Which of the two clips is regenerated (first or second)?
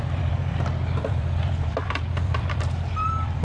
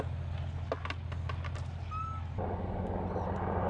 first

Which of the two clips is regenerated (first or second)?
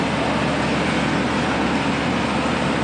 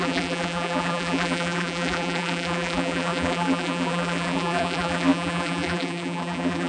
second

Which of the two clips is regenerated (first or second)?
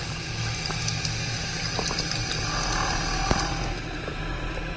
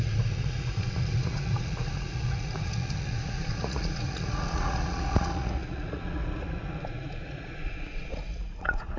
second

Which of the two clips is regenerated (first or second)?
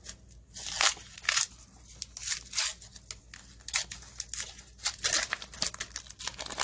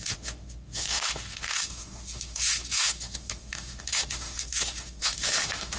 second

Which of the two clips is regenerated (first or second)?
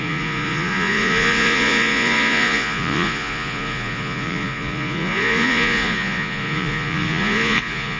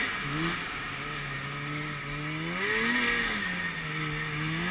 first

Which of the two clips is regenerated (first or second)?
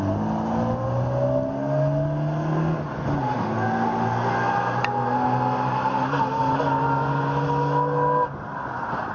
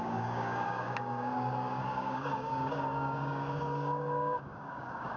second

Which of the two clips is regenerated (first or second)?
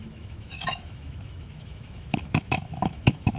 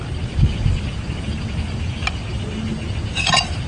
first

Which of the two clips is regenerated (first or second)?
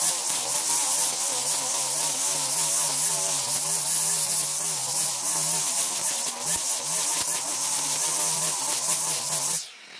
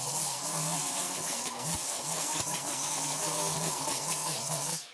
second